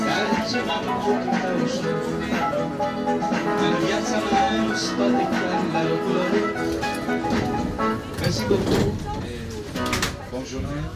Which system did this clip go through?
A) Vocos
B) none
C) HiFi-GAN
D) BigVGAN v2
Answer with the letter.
B